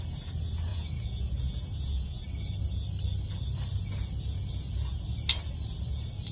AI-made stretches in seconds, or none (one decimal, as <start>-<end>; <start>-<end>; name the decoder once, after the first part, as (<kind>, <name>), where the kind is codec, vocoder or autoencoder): 0.7-2.2 (vocoder, Vocos)